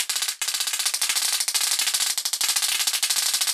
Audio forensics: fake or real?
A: real